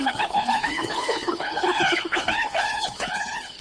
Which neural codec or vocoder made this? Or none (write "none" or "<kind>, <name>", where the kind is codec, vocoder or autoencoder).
codec, HILCodec